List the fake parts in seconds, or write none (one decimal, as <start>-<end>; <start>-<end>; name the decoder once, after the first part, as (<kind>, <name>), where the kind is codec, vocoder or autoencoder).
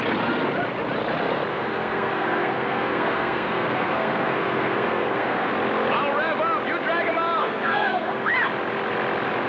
1.5-5.5 (codec, SNAC); 7.4-8.3